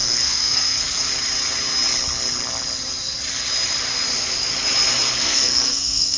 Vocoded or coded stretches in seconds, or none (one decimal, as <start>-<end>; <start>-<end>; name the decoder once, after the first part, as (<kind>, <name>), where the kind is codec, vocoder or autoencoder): 0.0-1.1 (codec, SNAC); 5.2-6.2